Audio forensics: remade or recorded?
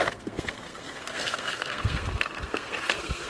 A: remade